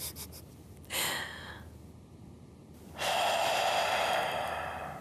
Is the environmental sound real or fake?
real